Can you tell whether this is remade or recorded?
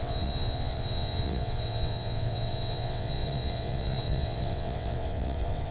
remade